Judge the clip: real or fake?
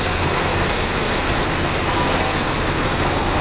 fake